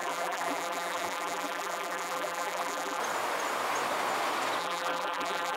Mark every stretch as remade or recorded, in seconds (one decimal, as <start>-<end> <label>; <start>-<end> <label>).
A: 0.0-3.0 remade; 3.0-4.6 recorded; 4.6-5.6 remade